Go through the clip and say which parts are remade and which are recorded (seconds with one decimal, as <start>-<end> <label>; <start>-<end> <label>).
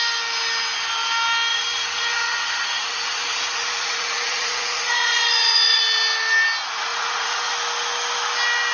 0.0-1.5 recorded; 1.5-5.8 remade; 5.8-6.9 recorded; 6.9-7.5 remade; 7.5-8.7 recorded